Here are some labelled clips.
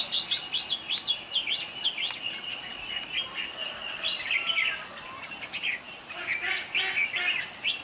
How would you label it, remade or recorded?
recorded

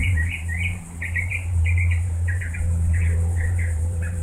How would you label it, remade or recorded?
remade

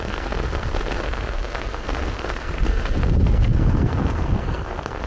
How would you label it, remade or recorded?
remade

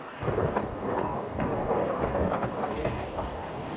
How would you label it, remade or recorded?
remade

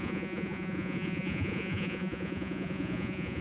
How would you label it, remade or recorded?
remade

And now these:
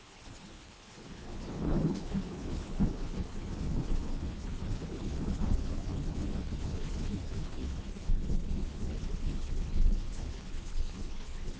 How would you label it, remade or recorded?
remade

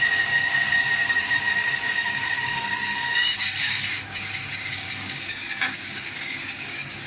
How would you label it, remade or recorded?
remade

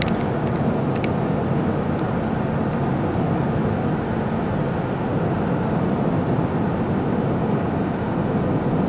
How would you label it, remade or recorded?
recorded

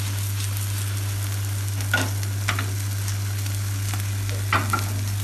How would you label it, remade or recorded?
recorded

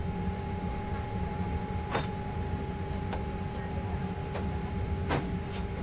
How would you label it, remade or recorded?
recorded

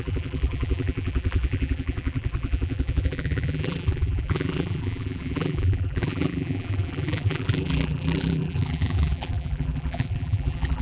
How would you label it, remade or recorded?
remade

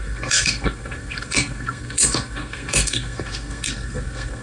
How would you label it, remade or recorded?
remade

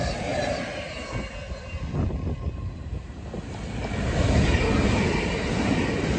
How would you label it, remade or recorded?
recorded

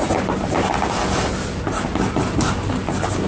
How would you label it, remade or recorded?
recorded